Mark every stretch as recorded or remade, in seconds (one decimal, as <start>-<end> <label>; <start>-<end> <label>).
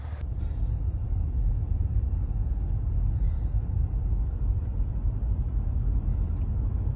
0.0-1.0 recorded; 1.0-3.1 remade; 3.1-7.0 recorded